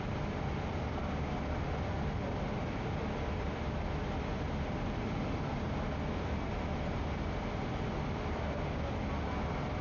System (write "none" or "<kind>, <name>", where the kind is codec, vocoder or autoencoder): none